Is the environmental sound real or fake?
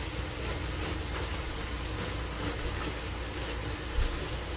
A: real